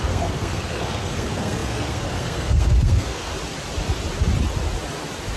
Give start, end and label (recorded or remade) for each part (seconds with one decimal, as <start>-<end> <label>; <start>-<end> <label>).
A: 0.0-3.3 remade; 3.3-5.4 recorded

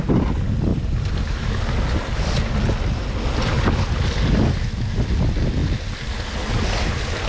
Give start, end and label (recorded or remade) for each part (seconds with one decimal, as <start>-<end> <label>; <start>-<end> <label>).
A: 0.0-7.3 recorded

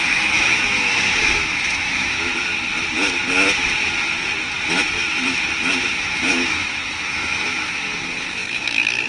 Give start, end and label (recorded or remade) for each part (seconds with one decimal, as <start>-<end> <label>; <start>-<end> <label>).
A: 0.0-2.3 remade; 2.3-5.8 recorded; 5.8-9.1 remade